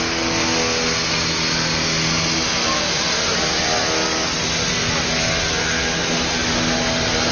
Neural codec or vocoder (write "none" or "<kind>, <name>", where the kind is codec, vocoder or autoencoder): none